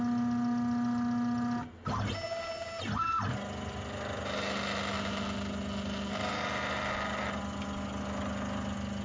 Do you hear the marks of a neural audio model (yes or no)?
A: no